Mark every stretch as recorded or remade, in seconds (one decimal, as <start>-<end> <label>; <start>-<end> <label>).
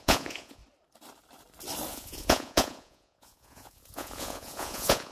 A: 0.0-0.6 remade; 0.6-1.9 recorded; 1.9-5.1 remade